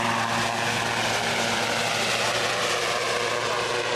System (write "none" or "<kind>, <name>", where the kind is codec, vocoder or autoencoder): none